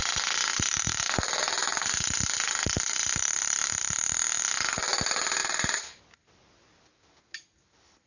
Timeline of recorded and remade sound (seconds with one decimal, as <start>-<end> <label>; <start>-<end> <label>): 0.0-0.5 recorded; 0.5-5.0 remade; 5.0-5.4 recorded; 5.4-6.0 remade; 6.0-8.1 recorded